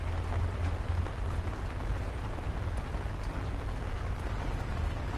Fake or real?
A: real